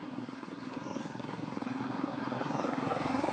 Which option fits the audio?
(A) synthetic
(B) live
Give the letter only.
A